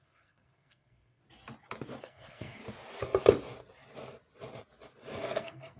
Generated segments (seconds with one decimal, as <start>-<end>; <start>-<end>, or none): 0.0-1.2; 2.0-2.6; 5.2-5.8